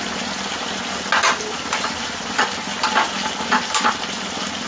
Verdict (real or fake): real